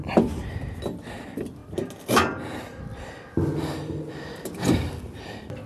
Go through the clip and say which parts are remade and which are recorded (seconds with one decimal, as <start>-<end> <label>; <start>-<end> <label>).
0.0-5.7 recorded